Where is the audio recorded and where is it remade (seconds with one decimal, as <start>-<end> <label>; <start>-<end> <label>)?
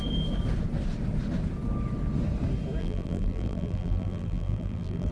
0.0-2.8 recorded; 2.8-5.1 remade